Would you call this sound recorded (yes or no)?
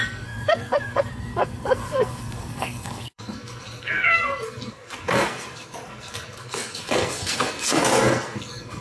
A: no